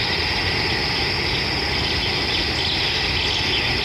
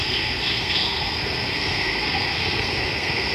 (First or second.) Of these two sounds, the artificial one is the second